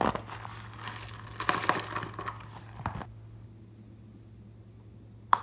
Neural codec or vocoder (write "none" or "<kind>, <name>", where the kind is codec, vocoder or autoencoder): none